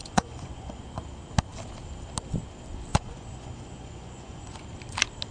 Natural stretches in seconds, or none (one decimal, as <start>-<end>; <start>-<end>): 0.8-2.9; 4.6-5.3